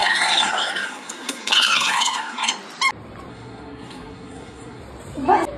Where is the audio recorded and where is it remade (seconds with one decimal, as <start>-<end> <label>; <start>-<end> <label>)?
0.0-2.5 remade; 2.5-3.3 recorded; 3.3-4.8 remade; 4.8-5.6 recorded